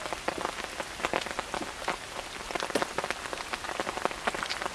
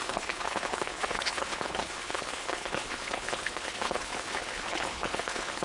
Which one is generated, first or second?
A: second